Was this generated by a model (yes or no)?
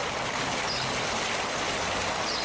no